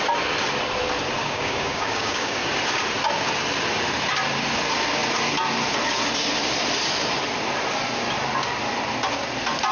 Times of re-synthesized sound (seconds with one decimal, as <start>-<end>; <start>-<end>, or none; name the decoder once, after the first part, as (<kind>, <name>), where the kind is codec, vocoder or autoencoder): 1.2-2.4 (codec, DAC)